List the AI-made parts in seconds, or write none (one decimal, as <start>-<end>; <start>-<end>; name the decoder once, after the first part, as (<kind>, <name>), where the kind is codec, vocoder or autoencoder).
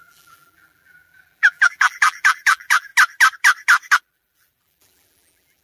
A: 0.0-2.9 (vocoder, BigVGAN v2); 4.0-5.6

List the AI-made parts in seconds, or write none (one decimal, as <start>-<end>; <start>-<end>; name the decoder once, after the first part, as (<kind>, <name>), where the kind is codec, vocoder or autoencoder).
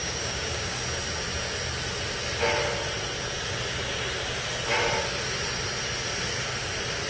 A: 0.0-0.8 (codec, DAC)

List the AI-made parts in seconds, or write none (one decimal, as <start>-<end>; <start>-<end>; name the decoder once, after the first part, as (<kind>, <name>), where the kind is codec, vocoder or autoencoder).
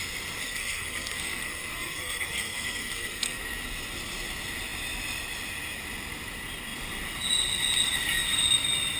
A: 0.4-3.4 (codec, SNAC)